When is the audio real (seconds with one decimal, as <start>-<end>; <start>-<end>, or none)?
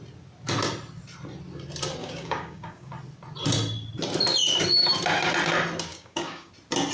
0.0-2.0; 2.9-5.9; 6.5-6.9